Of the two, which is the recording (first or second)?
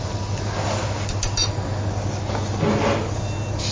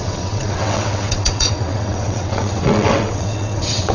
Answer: first